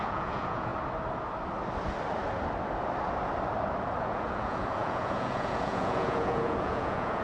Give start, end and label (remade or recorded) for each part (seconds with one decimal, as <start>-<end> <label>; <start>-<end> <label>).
0.0-0.7 remade; 0.7-4.0 recorded; 4.0-7.2 remade